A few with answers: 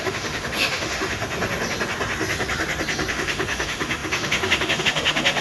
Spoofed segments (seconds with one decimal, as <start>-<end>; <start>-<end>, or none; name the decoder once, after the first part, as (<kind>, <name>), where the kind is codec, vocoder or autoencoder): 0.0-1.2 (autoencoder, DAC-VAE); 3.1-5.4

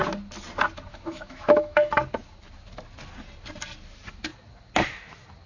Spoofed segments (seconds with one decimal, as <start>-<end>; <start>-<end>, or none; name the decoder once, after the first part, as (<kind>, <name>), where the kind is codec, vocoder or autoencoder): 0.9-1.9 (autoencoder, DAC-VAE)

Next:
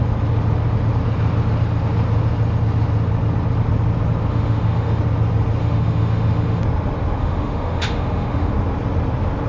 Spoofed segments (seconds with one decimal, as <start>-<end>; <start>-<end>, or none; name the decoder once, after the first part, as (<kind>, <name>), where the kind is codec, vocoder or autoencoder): 4.3-5.0 (autoencoder, DAC-VAE); 5.6-6.6; 7.2-8.5